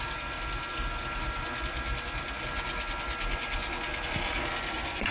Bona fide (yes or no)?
yes